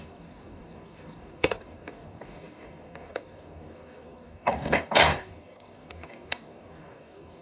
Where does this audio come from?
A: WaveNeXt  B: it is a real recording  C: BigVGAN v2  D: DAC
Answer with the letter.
D